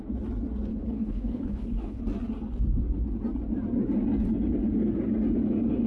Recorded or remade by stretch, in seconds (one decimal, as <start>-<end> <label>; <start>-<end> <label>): 0.0-0.7 recorded; 0.7-2.0 remade; 2.0-5.9 recorded

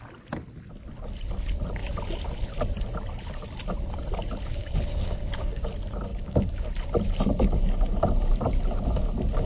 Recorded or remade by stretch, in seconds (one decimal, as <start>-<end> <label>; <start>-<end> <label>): 0.0-4.5 recorded; 4.5-5.6 remade; 5.6-6.1 recorded; 6.1-6.7 remade; 6.7-9.5 recorded